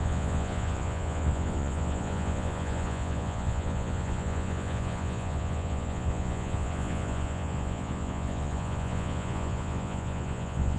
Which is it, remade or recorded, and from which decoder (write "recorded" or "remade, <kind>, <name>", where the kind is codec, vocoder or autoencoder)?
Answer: remade, vocoder, Vocos